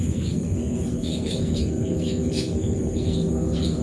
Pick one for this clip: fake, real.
fake